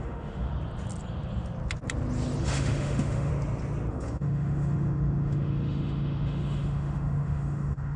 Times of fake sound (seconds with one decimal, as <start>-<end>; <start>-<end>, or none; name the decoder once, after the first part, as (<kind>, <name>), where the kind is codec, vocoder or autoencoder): 0.0-0.5 (autoencoder, DAC-VAE); 2.4-3.3; 3.9-8.0